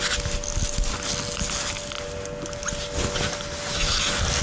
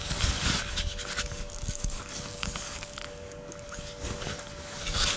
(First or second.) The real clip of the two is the first